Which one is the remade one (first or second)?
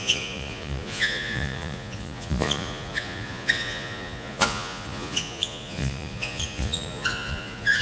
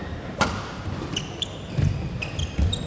first